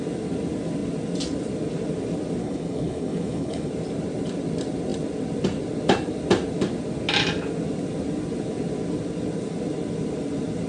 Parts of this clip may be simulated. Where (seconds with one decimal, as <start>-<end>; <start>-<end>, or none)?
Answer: 2.4-3.7